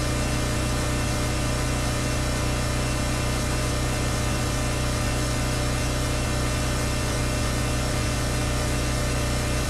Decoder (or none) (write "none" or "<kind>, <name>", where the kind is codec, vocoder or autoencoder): vocoder, Vocos